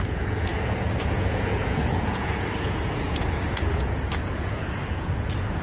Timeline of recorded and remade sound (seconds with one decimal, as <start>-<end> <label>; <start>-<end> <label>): 0.0-5.6 remade